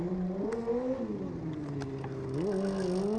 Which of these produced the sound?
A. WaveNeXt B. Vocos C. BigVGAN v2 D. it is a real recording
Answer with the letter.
D